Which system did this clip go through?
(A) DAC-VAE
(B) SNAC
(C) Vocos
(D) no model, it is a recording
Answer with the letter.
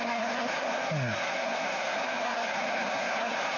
B